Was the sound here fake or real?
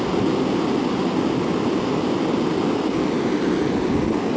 real